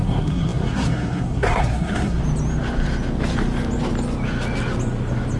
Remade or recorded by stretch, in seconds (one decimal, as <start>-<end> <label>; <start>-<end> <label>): 0.0-2.2 remade; 2.2-5.4 recorded